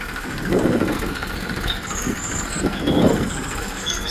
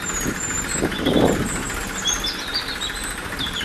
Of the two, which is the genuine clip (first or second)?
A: second